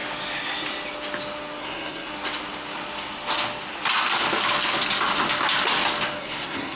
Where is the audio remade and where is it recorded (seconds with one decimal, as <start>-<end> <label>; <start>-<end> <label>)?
0.0-1.6 recorded; 1.6-2.1 remade; 2.1-6.2 recorded; 6.2-6.8 remade